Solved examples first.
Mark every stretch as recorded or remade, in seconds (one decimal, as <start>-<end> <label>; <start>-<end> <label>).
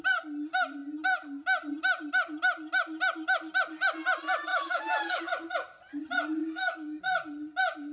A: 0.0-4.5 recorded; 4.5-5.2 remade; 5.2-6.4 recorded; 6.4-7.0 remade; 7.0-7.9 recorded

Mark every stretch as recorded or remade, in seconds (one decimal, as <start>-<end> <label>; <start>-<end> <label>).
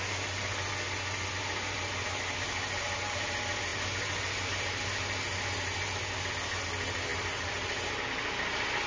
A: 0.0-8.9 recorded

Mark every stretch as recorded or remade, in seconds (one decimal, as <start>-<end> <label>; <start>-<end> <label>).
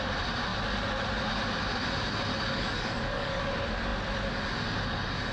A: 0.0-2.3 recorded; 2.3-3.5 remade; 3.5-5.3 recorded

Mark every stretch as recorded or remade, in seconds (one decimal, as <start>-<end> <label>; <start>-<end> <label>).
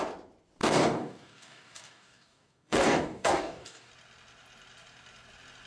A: 0.0-0.6 recorded; 0.6-3.9 remade; 3.9-5.7 recorded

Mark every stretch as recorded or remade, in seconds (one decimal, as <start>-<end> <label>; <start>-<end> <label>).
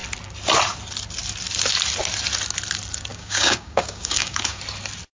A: 0.0-3.1 recorded; 3.1-4.6 remade; 4.6-5.2 recorded